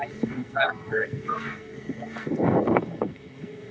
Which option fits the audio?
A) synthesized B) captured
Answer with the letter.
A